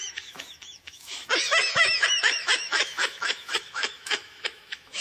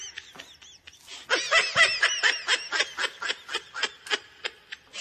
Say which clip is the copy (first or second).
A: first